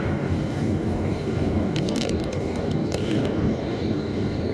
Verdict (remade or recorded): remade